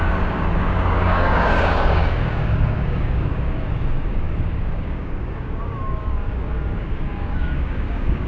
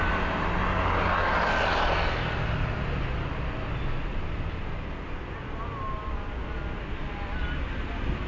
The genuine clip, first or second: second